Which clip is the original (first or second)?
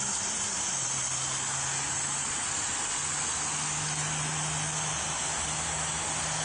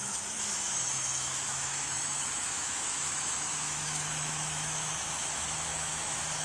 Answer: first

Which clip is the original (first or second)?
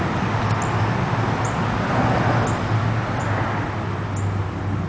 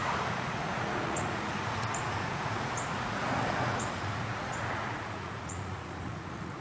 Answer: first